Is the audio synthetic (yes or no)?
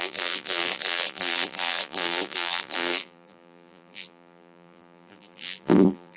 yes